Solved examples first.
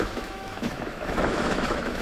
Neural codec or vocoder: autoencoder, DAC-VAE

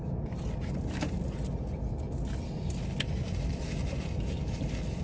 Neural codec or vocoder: none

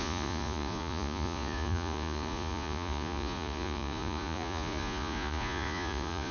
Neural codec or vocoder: vocoder, Vocos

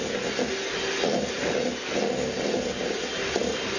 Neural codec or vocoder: none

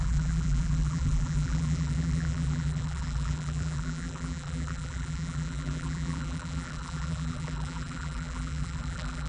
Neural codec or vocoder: vocoder, BigVGAN v2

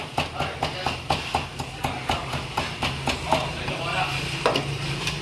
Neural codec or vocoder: none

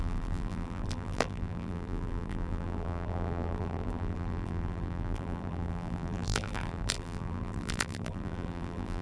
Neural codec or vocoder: vocoder, BigVGAN v2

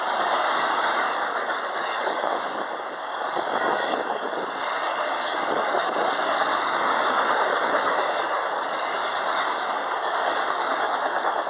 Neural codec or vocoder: codec, DAC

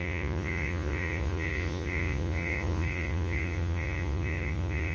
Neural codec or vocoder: vocoder, Vocos